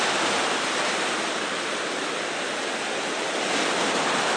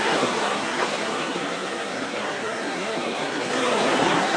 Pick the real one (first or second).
first